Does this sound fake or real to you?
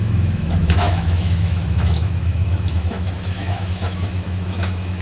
fake